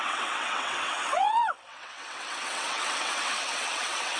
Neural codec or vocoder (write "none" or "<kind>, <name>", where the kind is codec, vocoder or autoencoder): vocoder, WaveNeXt